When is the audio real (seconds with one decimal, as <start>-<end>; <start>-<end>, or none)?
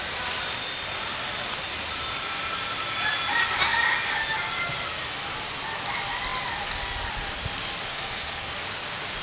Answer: 0.0-7.9; 8.5-9.2